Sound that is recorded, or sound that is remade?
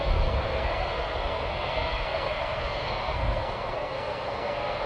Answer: remade